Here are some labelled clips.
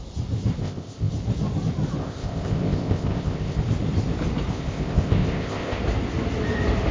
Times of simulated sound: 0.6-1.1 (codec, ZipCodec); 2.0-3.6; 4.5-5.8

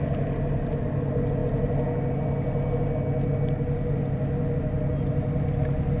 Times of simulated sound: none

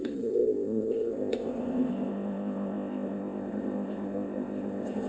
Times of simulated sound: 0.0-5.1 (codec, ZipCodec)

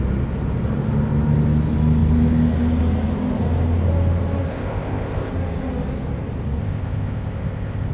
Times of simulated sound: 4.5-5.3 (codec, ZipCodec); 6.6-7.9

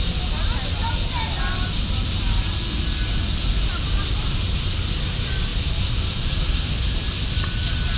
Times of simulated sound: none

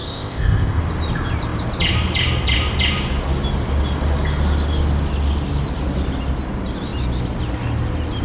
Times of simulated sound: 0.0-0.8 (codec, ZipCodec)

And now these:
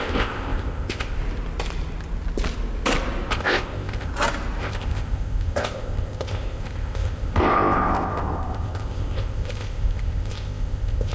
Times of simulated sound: 0.0-1.2 (codec, ZipCodec); 3.3-4.1; 4.6-11.1